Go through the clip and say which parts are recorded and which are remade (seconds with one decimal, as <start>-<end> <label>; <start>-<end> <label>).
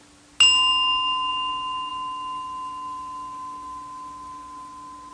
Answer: 0.0-5.1 recorded